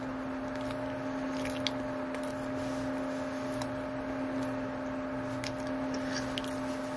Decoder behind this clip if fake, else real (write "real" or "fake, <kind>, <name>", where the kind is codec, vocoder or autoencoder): real